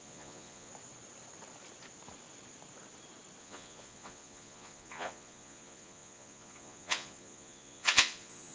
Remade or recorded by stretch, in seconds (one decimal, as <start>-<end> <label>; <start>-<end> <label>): 0.0-0.7 remade; 0.7-3.4 recorded; 3.4-8.5 remade